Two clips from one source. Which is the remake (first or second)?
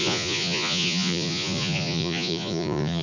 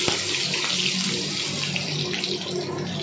first